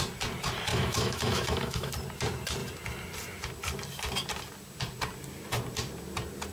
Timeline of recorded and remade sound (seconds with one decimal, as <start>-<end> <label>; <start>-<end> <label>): 0.0-0.7 recorded; 0.7-1.9 remade; 1.9-6.5 recorded